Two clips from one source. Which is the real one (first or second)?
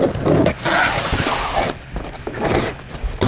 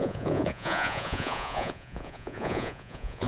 first